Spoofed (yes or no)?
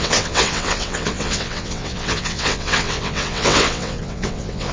yes